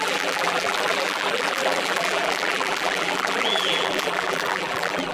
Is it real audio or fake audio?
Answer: fake